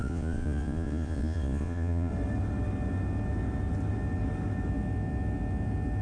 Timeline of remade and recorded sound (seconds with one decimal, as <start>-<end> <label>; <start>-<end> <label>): 0.0-2.1 remade; 2.1-6.0 recorded